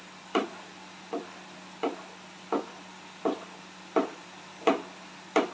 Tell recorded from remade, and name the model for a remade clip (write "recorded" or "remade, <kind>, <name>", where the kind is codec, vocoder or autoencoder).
recorded